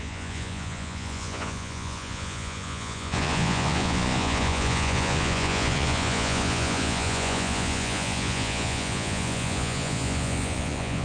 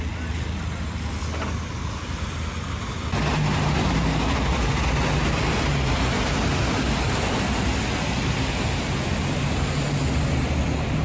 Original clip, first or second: second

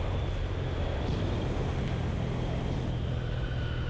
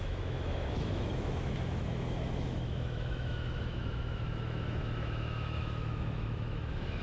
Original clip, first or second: first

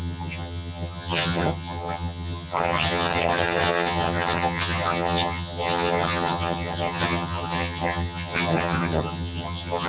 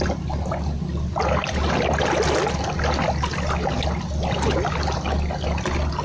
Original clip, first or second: second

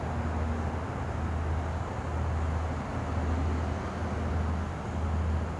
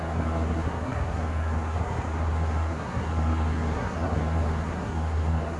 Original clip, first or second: first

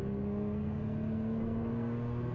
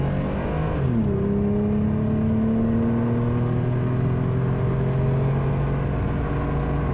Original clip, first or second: second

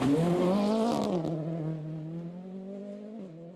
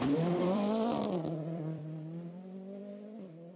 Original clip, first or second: first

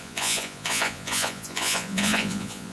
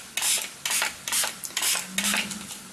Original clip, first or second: second